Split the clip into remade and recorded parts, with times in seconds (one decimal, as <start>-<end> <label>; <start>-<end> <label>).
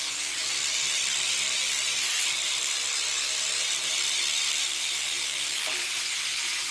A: 0.0-5.8 recorded; 5.8-6.7 remade